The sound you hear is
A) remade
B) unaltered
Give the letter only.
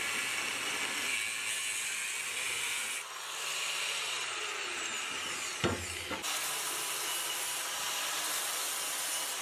B